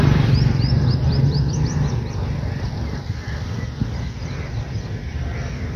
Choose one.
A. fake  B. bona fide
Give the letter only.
A